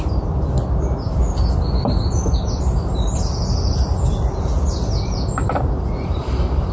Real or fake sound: real